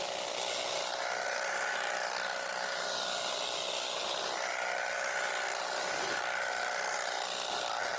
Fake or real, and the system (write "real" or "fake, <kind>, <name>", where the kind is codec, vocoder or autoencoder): real